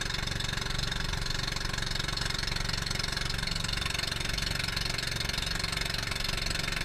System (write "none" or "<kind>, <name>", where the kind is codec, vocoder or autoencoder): vocoder, BigVGAN v2